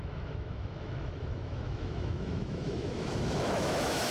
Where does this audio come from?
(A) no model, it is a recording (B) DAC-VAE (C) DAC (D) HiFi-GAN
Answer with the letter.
B